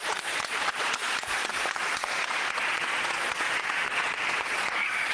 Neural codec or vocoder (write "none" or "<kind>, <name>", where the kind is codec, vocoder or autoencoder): vocoder, Vocos